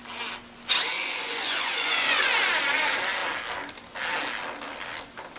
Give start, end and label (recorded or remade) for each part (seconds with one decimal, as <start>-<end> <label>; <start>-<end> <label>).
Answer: 0.0-0.9 recorded; 0.9-2.4 remade; 2.4-5.4 recorded